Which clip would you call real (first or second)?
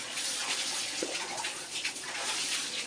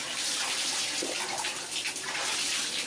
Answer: second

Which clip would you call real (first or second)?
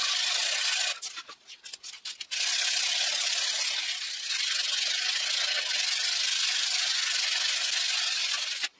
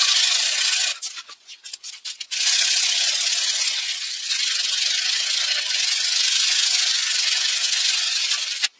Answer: first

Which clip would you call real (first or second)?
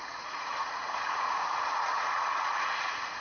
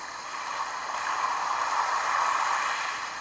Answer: second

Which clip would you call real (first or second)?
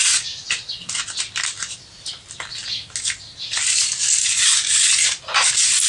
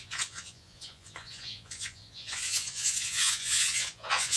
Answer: first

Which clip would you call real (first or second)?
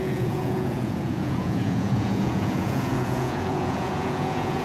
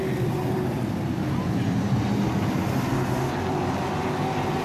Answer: second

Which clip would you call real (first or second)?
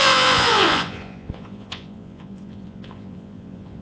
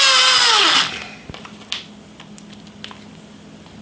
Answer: second